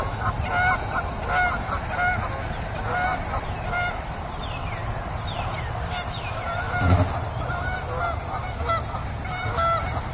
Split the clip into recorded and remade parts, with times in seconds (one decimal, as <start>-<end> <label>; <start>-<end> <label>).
0.0-3.1 recorded; 3.1-7.3 remade; 7.3-10.1 recorded

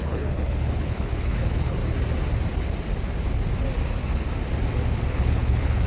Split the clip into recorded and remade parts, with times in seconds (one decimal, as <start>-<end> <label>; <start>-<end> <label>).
0.0-1.8 remade; 1.8-5.1 recorded; 5.1-5.9 remade